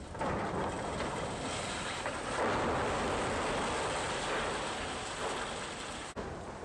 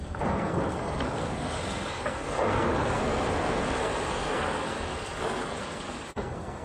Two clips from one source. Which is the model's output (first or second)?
second